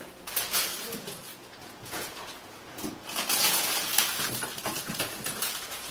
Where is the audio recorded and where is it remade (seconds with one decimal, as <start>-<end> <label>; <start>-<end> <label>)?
0.0-3.9 remade; 3.9-4.6 recorded; 4.6-5.9 remade